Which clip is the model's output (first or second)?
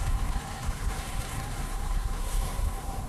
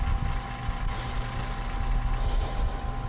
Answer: first